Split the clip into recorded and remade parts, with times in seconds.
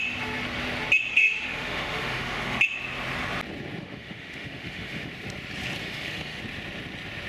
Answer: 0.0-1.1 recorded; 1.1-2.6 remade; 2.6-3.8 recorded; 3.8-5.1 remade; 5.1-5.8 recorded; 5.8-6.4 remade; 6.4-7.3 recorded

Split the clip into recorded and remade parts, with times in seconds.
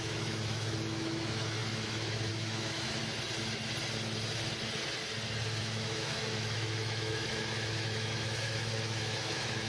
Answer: 0.0-3.0 remade; 3.0-5.6 recorded; 5.6-9.7 remade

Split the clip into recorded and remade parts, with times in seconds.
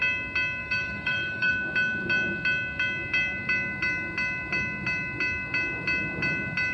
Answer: 0.0-0.6 recorded; 0.6-1.5 remade; 1.5-6.7 recorded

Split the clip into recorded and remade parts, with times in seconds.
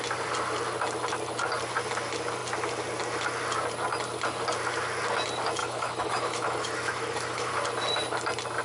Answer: 0.0-5.6 recorded; 5.6-7.5 remade; 7.5-8.6 recorded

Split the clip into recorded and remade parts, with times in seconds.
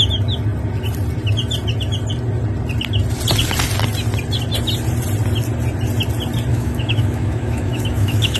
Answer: 0.0-6.5 recorded; 6.5-8.4 remade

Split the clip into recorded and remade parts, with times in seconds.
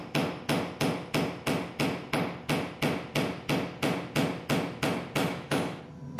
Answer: 0.0-5.2 recorded; 5.2-5.8 remade; 5.8-6.2 recorded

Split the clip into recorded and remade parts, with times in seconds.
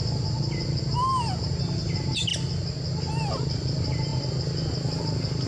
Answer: 0.0-5.5 recorded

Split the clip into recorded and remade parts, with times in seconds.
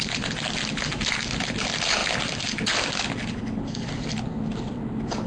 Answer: 0.0-5.3 recorded